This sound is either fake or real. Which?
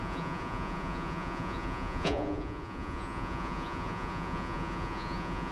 fake